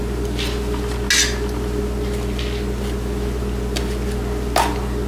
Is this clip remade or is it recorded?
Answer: recorded